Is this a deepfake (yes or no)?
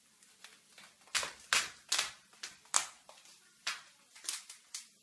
no